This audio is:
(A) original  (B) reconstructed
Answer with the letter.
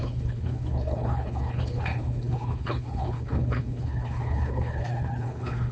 B